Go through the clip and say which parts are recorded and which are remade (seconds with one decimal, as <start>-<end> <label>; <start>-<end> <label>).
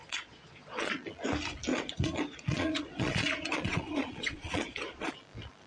0.0-0.9 remade; 0.9-1.7 recorded; 1.7-5.1 remade; 5.1-5.7 recorded